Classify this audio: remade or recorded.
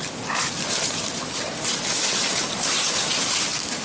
recorded